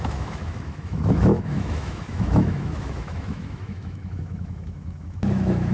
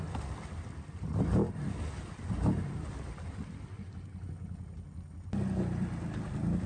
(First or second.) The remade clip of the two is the first